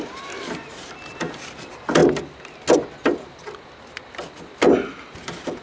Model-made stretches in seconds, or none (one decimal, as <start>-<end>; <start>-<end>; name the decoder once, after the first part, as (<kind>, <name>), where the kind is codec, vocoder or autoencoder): none